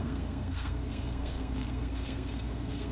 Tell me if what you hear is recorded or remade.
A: remade